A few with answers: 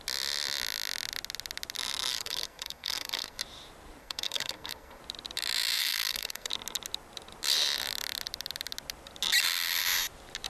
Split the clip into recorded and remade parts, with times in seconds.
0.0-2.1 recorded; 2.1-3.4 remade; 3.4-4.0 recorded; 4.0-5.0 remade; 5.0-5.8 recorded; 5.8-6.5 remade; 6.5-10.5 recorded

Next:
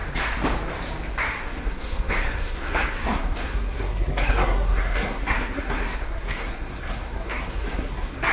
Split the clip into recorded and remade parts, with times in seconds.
0.0-1.2 recorded; 1.2-8.3 remade

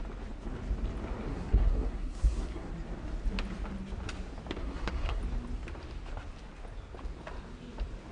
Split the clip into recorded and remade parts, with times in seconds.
0.0-1.3 recorded; 1.3-2.7 remade; 2.7-4.6 recorded; 4.6-5.2 remade; 5.2-8.1 recorded

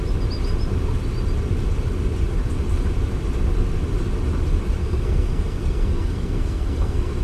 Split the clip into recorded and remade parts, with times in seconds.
0.0-4.8 recorded; 4.8-7.2 remade